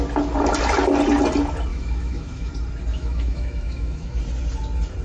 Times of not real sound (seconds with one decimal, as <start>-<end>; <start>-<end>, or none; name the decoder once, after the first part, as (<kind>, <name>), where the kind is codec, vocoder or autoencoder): 1.7-2.5 (autoencoder, DAC-VAE); 2.9-4.2